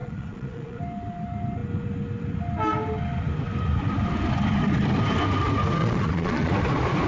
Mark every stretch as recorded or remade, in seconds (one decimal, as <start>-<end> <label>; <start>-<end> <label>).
0.0-0.8 remade; 0.8-5.8 recorded; 5.8-6.5 remade; 6.5-7.1 recorded

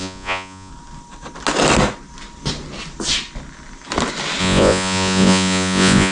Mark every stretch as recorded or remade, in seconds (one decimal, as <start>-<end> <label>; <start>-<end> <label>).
0.0-0.7 remade; 0.7-4.4 recorded; 4.4-6.1 remade

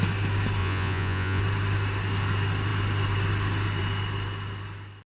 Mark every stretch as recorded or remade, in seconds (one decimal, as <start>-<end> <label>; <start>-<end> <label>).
0.0-0.6 recorded; 0.6-1.4 remade; 1.4-5.1 recorded

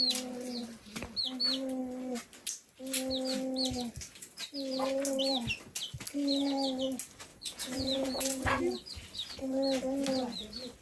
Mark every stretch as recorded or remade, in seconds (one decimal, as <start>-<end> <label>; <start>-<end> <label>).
0.0-7.3 recorded; 7.3-8.6 remade; 8.6-10.8 recorded

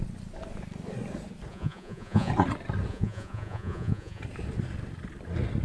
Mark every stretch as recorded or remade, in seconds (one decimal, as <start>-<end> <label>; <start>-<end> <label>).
0.0-1.5 recorded; 1.5-2.3 remade; 2.3-2.9 recorded; 2.9-4.2 remade; 4.2-5.6 recorded

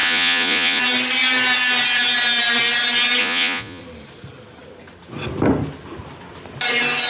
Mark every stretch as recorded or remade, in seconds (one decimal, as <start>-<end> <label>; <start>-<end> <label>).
0.0-0.8 remade; 0.8-3.2 recorded; 3.2-3.8 remade; 3.8-7.1 recorded